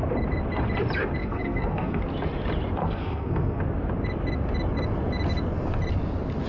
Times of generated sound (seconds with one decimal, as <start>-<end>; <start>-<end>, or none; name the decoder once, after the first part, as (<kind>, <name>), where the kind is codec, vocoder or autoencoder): 1.2-2.0 (codec, SNAC); 2.8-3.6